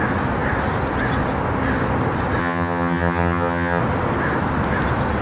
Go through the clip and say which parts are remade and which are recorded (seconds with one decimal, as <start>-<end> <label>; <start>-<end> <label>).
0.0-2.4 recorded; 2.4-3.8 remade; 3.8-5.2 recorded